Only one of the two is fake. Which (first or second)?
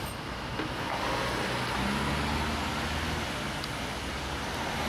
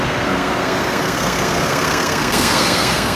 second